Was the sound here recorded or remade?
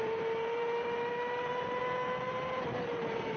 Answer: remade